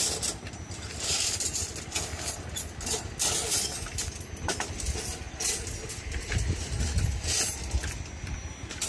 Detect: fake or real real